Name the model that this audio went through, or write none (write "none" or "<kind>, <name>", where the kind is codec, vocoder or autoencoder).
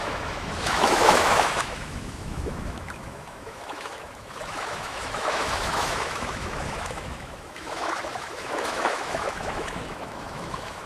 autoencoder, DAC-VAE